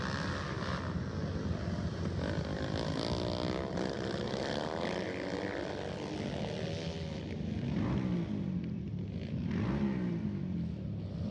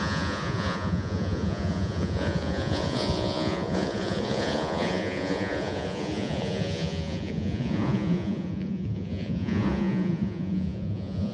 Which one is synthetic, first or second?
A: second